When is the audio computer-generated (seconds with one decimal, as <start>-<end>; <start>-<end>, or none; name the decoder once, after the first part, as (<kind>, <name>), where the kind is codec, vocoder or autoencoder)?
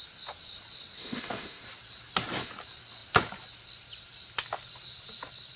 1.0-1.6 (autoencoder, DAC-VAE)